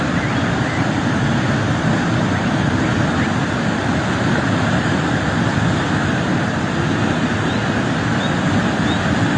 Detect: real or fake real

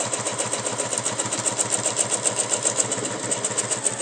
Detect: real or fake real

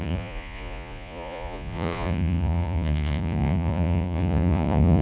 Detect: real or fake fake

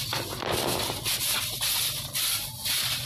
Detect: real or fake real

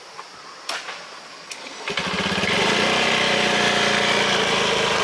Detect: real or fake real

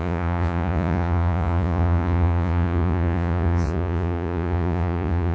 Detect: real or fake fake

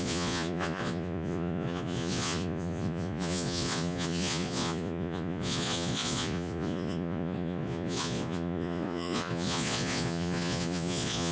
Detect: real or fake fake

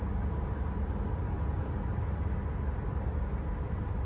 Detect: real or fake real